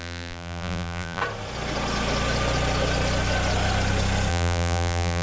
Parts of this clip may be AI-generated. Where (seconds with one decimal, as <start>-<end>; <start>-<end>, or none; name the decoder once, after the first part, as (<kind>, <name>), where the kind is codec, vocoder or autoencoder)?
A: 0.0-1.2 (vocoder, BigVGAN v2); 4.3-5.2